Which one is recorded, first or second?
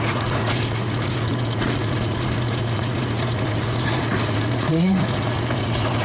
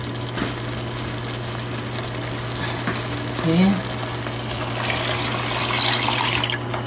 second